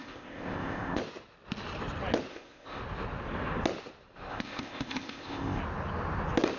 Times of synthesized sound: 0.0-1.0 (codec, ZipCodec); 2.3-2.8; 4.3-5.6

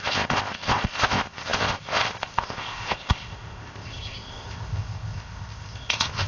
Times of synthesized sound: 0.0-6.3 (codec, ZipCodec)

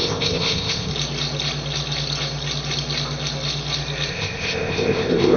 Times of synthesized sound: 0.0-0.9 (codec, ZipCodec); 4.1-5.4

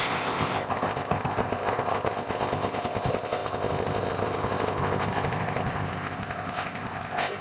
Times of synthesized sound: 0.0-7.4 (codec, ZipCodec)

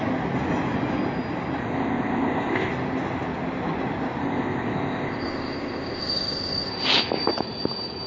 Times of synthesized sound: 1.6-2.7 (codec, ZipCodec); 4.2-6.7

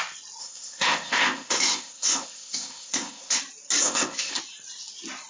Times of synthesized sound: 0.4-3.4 (codec, ZipCodec); 3.8-4.4